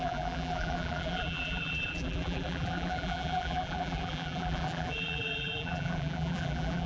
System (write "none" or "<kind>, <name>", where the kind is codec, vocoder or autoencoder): vocoder, BigVGAN v2